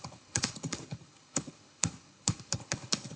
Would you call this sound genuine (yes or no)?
no